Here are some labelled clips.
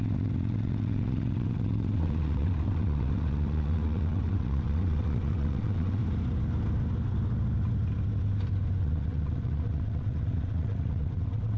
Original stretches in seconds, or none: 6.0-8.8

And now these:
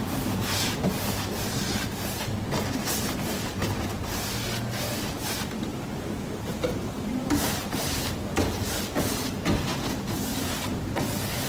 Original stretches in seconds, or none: 0.0-5.7; 9.0-9.7; 11.1-11.5

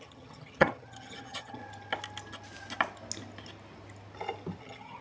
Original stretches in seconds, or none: 1.6-4.6

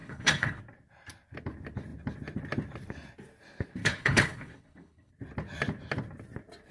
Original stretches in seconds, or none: 0.6-3.8; 5.1-6.7

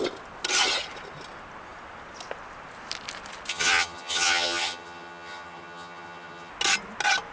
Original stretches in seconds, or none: 0.0-3.5; 6.5-7.3